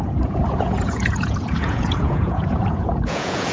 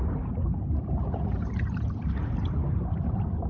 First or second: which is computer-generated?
first